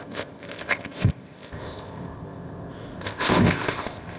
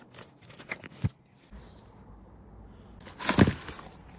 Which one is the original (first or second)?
second